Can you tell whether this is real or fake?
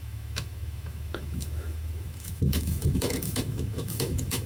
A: fake